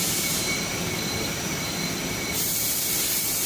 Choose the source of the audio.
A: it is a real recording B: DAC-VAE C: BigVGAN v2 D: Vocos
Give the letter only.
C